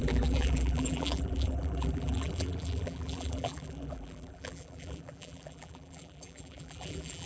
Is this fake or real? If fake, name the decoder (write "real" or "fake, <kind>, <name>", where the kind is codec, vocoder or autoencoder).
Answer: fake, vocoder, BigVGAN v2